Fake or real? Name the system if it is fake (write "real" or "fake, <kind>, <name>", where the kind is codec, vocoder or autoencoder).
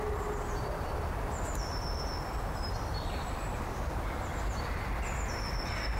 real